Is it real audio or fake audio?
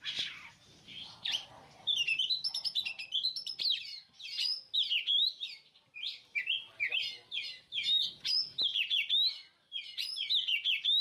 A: real